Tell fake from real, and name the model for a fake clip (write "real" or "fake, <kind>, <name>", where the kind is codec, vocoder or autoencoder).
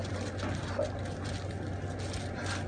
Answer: real